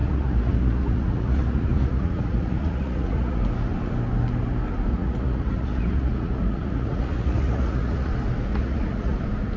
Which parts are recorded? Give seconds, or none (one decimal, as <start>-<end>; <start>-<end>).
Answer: 3.4-4.9; 8.1-8.5; 9.2-9.6